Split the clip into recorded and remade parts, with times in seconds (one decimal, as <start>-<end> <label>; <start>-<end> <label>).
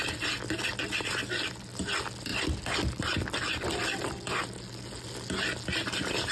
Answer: 0.0-6.3 recorded